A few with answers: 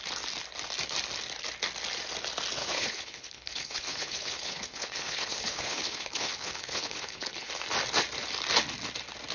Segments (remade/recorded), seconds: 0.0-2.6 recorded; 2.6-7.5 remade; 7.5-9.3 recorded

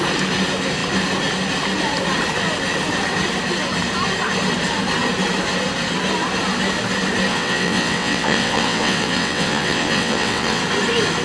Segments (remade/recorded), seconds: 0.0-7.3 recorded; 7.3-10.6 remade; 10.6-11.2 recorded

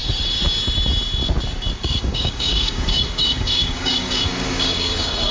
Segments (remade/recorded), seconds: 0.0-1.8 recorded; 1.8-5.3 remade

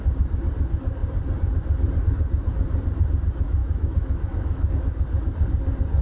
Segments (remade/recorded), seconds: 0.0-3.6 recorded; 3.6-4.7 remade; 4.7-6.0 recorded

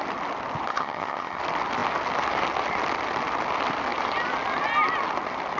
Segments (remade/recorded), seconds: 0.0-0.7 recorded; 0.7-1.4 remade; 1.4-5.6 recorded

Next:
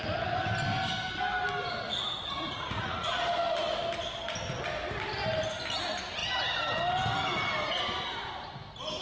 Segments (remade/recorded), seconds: 0.0-2.2 recorded; 2.2-3.2 remade; 3.2-9.0 recorded